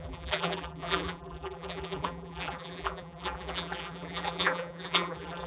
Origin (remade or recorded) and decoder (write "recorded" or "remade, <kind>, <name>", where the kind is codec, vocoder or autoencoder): remade, vocoder, BigVGAN v2